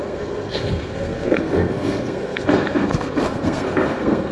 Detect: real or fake fake